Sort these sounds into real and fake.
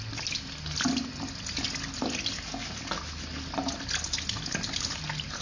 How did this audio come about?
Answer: real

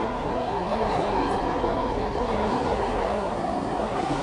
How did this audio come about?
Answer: fake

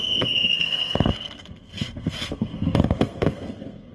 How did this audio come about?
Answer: fake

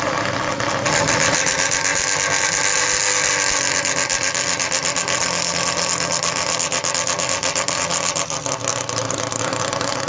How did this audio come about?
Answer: real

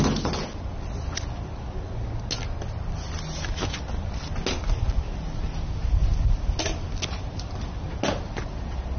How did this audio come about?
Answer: real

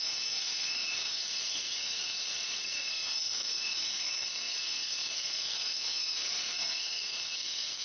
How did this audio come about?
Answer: fake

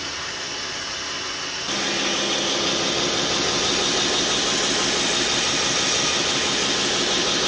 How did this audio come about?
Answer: real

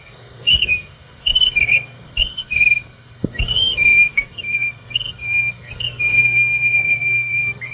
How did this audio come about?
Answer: fake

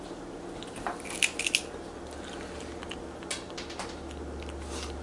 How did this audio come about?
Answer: real